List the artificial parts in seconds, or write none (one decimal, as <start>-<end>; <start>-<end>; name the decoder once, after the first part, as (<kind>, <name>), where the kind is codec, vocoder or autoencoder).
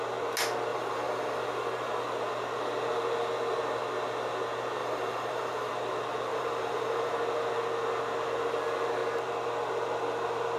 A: 0.7-1.4 (vocoder, BigVGAN v2); 4.8-5.7; 6.3-7.1